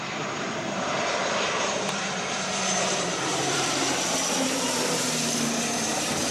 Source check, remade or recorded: remade